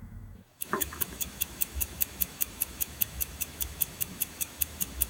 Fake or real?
fake